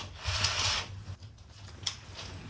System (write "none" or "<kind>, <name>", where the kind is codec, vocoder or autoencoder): none